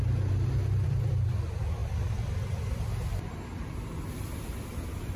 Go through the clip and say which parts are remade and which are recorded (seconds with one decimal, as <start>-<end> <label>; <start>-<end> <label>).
0.0-5.2 remade